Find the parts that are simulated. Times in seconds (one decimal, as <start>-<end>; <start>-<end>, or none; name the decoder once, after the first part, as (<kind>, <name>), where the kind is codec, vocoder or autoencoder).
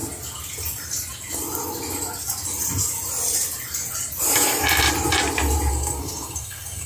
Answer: 5.7-6.9 (codec, SNAC)